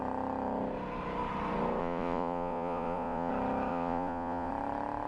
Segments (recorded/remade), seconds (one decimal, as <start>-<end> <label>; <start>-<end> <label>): 0.0-1.8 recorded; 1.8-3.3 remade; 3.3-3.7 recorded; 3.7-4.5 remade; 4.5-5.1 recorded